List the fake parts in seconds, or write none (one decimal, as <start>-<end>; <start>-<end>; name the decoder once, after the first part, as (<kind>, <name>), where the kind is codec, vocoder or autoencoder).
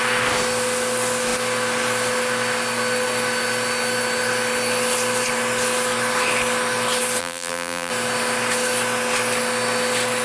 7.2-7.9 (vocoder, BigVGAN v2)